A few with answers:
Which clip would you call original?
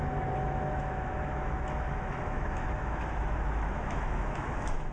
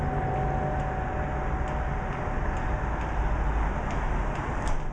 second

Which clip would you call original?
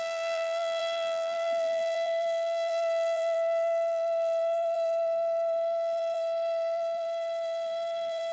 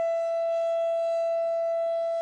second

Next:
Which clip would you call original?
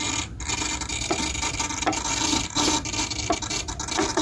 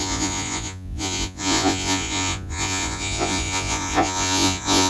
first